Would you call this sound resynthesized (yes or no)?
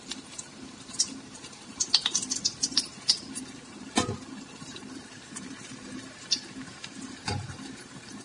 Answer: yes